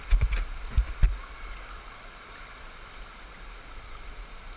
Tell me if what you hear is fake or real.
fake